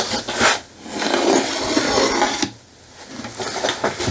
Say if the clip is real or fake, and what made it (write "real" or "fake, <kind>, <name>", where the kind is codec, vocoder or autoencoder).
real